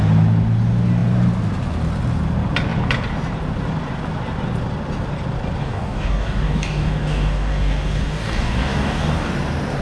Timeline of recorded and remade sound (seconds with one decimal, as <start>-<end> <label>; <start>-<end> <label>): 0.0-5.6 recorded; 5.6-9.3 remade; 9.3-9.8 recorded